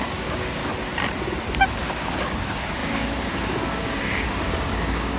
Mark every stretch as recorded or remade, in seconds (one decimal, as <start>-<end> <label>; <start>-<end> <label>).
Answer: 0.0-0.6 remade; 0.6-1.8 recorded; 1.8-5.2 remade